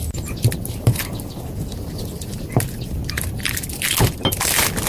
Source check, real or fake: real